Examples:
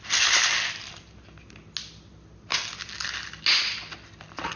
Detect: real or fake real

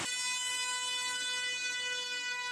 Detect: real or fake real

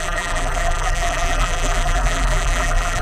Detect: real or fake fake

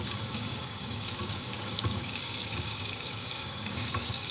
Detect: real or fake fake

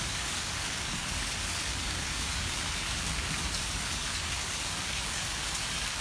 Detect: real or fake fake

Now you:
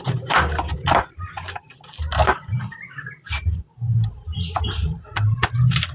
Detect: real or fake fake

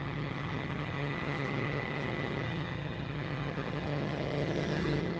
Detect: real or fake fake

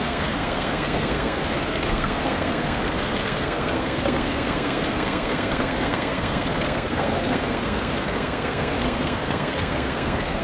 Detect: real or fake fake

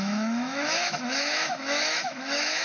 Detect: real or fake fake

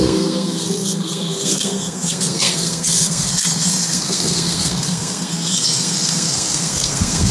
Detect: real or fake fake